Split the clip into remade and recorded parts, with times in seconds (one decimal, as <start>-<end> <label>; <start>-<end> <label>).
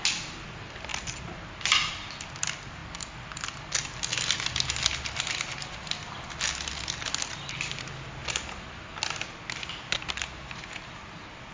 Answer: 0.0-11.5 recorded